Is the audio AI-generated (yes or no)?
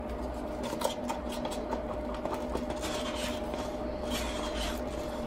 no